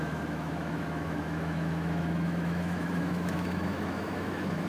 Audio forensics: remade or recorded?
remade